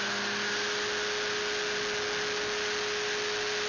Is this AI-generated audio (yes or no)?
no